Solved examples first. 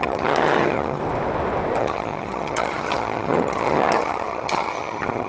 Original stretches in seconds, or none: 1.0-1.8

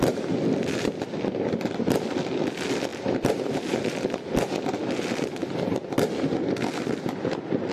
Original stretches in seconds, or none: 0.0-2.9; 3.5-7.7

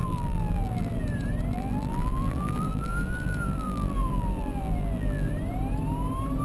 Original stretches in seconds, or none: 1.0-1.5; 5.3-6.4

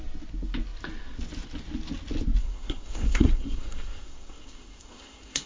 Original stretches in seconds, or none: 0.0-2.4

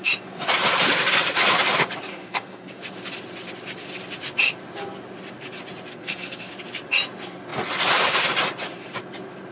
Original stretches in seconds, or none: 0.0-2.1; 2.8-5.9; 6.5-9.5

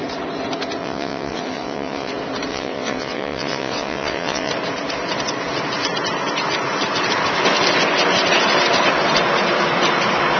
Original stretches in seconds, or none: 0.0-0.8; 2.1-2.5; 4.5-10.4